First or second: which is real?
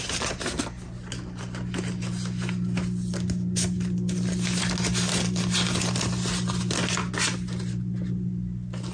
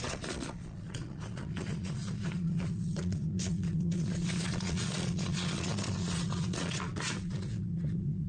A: first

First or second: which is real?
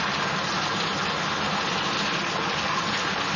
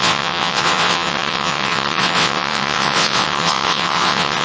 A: first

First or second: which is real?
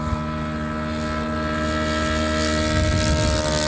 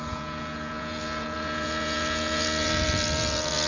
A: first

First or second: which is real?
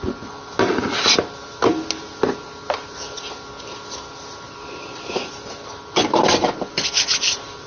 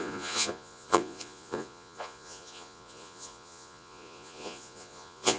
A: first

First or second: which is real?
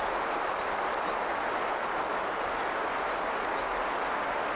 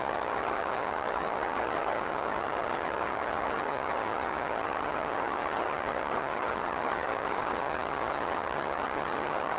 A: first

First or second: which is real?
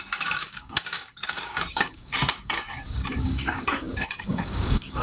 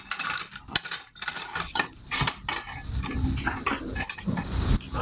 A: second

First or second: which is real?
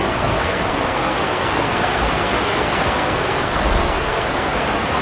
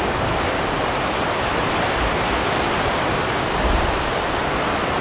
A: second